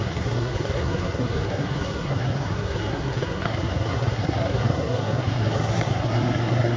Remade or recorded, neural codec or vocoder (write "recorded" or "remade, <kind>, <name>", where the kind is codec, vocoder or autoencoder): remade, codec, SNAC